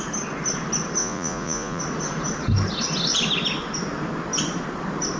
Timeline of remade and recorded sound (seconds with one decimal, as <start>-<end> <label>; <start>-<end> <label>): 0.0-1.0 recorded; 1.0-1.8 remade; 1.8-5.2 recorded